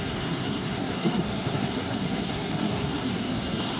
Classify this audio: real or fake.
fake